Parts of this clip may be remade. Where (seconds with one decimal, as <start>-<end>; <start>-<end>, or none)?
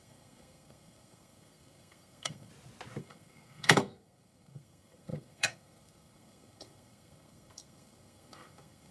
0.0-2.5; 3.0-8.9